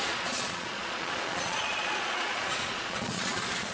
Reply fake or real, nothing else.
fake